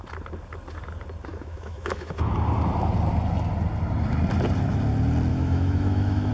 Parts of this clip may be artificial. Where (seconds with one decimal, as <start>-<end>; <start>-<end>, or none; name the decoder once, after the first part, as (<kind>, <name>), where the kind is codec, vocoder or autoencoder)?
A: 1.3-2.3 (autoencoder, DAC-VAE); 5.3-6.3